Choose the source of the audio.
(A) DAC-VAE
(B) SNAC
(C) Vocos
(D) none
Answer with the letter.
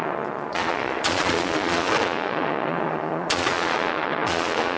C